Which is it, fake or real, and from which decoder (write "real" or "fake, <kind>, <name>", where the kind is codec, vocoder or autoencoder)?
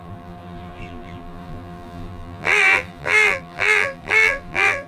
fake, vocoder, BigVGAN v2